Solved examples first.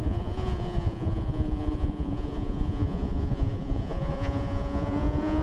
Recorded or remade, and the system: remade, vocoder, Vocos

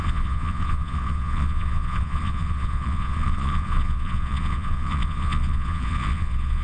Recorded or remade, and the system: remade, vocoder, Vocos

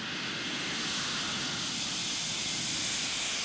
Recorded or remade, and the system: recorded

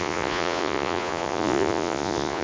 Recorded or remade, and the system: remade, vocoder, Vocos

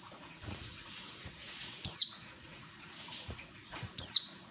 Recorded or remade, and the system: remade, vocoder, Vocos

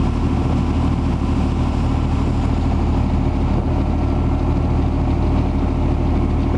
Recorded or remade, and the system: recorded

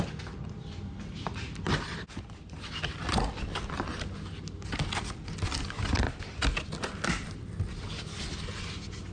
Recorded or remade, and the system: recorded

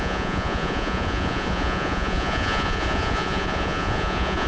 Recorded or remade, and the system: remade, vocoder, Vocos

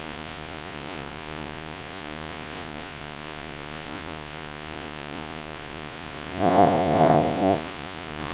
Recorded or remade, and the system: remade, vocoder, Vocos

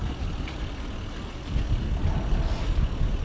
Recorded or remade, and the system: recorded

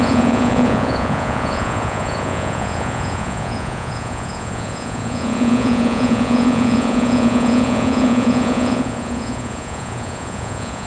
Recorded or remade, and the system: remade, vocoder, Vocos